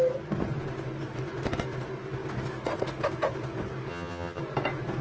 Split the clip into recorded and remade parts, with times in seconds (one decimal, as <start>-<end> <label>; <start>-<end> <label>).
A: 0.0-3.9 recorded; 3.9-4.4 remade; 4.4-5.0 recorded